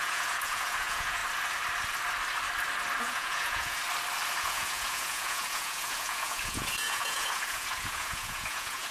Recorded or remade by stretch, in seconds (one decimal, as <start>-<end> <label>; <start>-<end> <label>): 0.0-1.2 remade; 1.2-3.0 recorded; 3.0-3.8 remade; 3.8-4.4 recorded; 4.4-8.9 remade